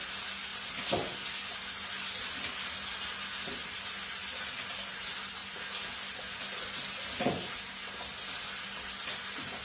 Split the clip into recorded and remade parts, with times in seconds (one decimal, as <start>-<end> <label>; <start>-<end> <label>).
0.0-9.6 recorded